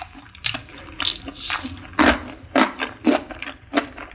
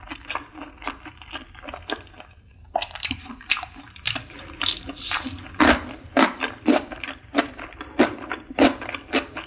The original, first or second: first